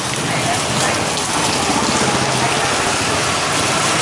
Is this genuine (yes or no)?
yes